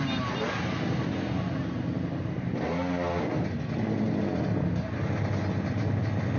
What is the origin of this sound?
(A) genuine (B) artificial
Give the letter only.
A